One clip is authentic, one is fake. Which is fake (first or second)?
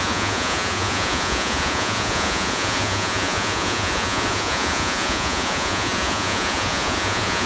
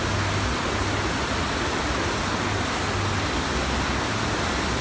first